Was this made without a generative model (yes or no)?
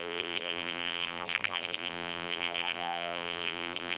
no